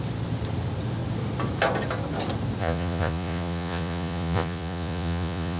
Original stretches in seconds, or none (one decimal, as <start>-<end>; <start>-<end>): 0.0-2.6